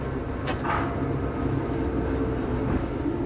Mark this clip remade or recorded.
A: recorded